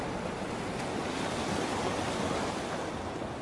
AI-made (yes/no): no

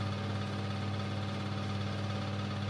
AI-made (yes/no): no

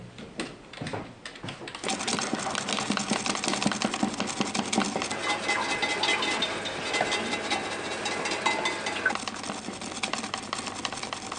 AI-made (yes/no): no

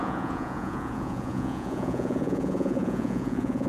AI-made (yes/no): yes